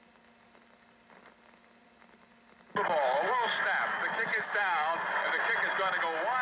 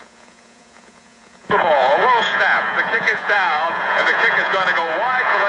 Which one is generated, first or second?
second